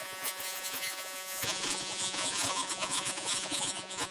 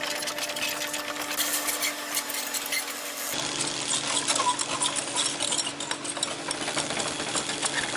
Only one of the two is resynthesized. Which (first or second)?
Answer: first